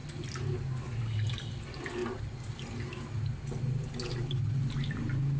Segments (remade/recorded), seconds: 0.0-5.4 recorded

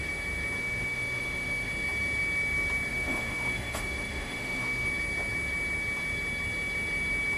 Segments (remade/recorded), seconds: 0.0-0.6 recorded; 0.6-1.7 remade; 1.7-2.9 recorded; 2.9-4.9 remade; 4.9-7.4 recorded

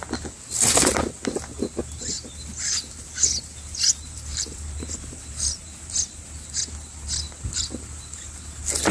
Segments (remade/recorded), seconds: 0.0-4.3 recorded; 4.3-5.9 remade; 5.9-8.9 recorded

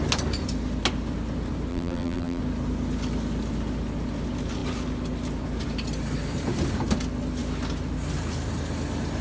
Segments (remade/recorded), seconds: 0.0-1.7 recorded; 1.7-2.4 remade; 2.4-9.2 recorded

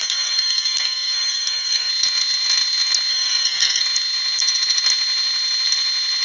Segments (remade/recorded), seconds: 0.0-1.9 remade; 1.9-3.1 recorded; 3.1-3.8 remade; 3.8-6.2 recorded

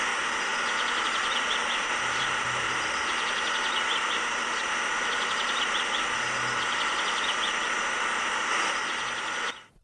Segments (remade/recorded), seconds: 0.0-9.8 recorded

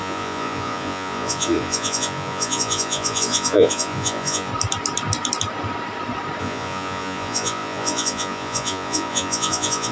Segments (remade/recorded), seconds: 0.0-4.5 remade; 4.5-6.4 recorded; 6.4-9.9 remade